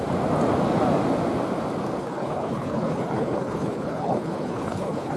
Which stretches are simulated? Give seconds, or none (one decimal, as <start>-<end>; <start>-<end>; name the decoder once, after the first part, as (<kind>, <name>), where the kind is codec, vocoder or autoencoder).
2.0-5.2 (codec, HILCodec)